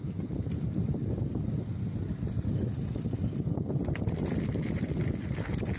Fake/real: real